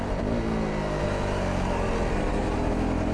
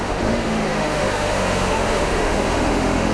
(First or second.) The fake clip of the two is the second